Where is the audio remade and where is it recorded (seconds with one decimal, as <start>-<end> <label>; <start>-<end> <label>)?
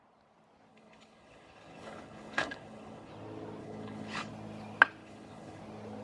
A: 0.0-0.7 recorded; 0.7-3.1 remade; 3.1-3.6 recorded; 3.6-4.3 remade; 4.3-5.0 recorded; 5.0-5.6 remade; 5.6-6.0 recorded